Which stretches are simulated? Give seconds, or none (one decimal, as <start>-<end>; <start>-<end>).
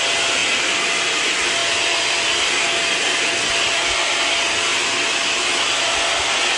none